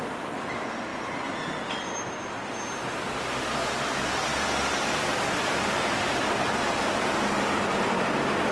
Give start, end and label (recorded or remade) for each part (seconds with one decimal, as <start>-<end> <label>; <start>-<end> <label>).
0.0-8.5 recorded

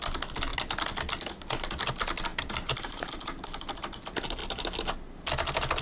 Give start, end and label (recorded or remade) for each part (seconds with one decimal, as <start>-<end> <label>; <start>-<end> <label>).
0.0-2.3 recorded; 2.3-3.1 remade; 3.1-5.8 recorded